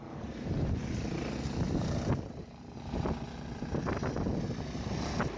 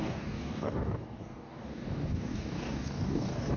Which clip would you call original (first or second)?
first